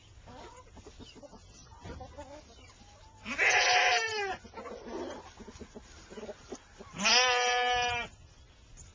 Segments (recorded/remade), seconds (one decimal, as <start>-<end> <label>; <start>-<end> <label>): 0.0-8.9 recorded